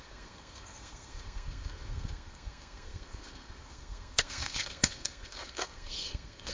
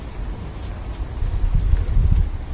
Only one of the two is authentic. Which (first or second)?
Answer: second